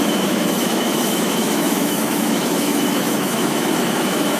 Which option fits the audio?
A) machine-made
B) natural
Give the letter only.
A